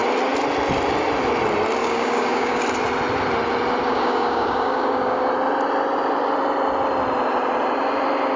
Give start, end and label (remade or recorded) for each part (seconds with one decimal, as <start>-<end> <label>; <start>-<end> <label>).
0.0-1.8 recorded; 1.8-2.6 remade; 2.6-3.8 recorded; 3.8-5.3 remade; 5.3-8.4 recorded